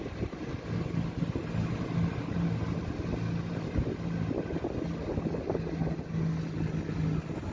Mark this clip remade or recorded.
recorded